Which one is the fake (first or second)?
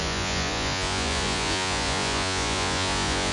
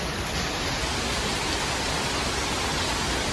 first